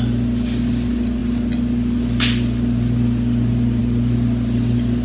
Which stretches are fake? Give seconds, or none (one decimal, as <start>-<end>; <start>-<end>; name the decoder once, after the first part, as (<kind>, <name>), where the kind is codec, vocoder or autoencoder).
none